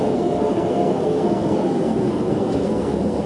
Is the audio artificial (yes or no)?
yes